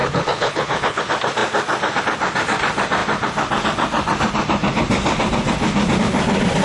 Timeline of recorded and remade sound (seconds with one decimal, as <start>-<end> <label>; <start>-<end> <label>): 0.0-1.0 remade; 1.0-6.6 recorded